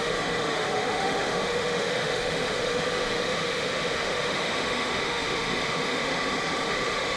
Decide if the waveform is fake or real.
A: fake